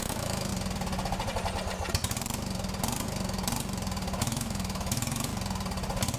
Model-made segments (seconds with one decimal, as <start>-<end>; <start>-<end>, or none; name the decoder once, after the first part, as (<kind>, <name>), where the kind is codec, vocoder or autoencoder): 0.0-0.5 (autoencoder, DAC-VAE); 4.2-5.3